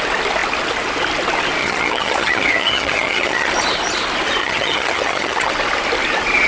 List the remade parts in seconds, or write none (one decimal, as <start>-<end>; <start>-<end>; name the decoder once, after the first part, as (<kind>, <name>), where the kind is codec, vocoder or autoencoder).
1.6-3.5 (vocoder, HiFi-GAN); 4.4-5.5